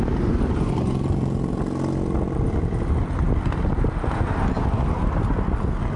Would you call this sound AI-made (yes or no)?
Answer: no